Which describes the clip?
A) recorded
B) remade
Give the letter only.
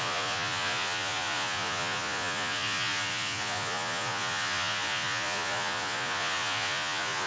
B